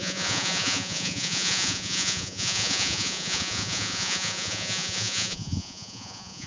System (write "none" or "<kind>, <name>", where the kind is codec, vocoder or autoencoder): vocoder, Vocos